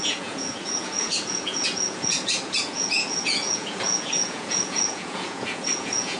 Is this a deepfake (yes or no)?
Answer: yes